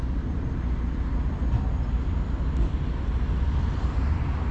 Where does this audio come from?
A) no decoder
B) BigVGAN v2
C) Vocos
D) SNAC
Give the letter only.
A